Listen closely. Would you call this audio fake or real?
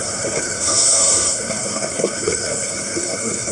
fake